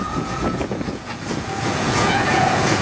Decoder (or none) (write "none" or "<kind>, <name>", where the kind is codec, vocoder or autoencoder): vocoder, Vocos